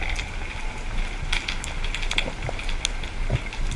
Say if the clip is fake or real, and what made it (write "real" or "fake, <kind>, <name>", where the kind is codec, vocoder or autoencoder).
real